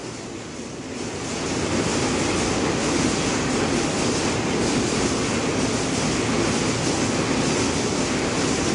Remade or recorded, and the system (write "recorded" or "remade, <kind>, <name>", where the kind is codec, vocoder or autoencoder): recorded